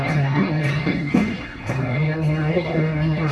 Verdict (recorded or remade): remade